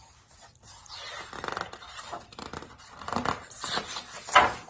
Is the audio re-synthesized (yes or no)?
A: no